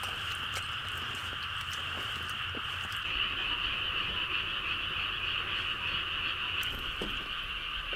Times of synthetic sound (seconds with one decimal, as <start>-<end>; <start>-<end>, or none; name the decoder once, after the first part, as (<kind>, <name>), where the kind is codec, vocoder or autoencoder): 3.4-5.2 (vocoder, BigVGAN v2)